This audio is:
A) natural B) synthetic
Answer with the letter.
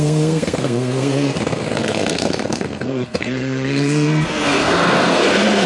B